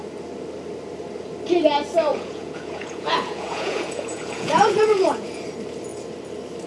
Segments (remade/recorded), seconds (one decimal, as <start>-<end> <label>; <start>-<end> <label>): 0.0-2.1 recorded; 2.1-5.4 remade; 5.4-6.7 recorded